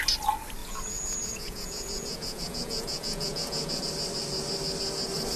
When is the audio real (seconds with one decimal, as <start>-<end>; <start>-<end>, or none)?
0.0-0.6; 3.8-5.4